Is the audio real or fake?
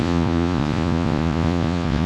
fake